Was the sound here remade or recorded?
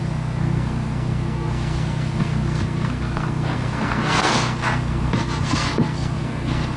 remade